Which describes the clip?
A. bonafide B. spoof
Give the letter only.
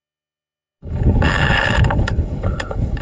B